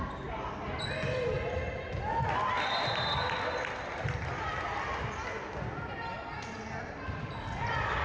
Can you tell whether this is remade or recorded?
recorded